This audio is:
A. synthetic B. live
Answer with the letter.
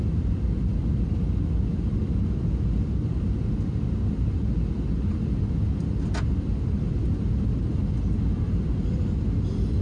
B